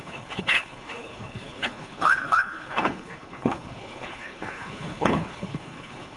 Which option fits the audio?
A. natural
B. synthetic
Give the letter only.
B